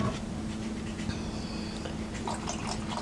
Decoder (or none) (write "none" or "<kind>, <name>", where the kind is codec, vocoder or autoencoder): none